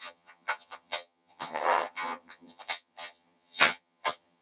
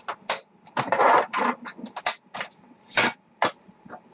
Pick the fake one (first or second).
first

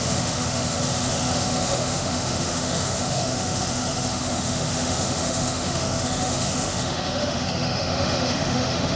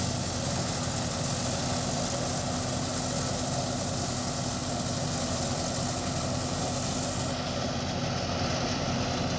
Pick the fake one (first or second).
first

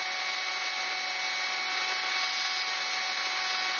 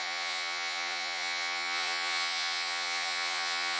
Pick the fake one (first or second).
second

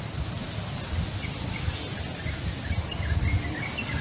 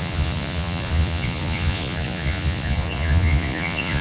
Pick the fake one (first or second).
second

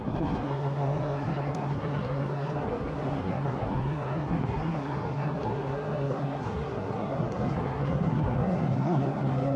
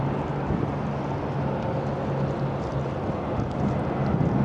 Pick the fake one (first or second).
first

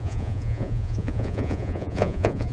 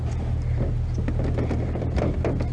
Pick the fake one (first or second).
first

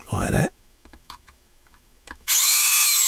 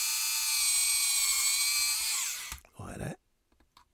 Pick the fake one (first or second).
first